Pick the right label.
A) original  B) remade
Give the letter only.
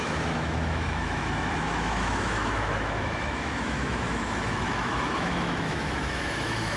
B